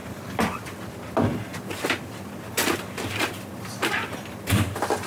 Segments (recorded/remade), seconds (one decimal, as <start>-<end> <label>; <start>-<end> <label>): 0.0-0.9 remade; 0.9-1.5 recorded; 1.5-4.6 remade; 4.6-5.1 recorded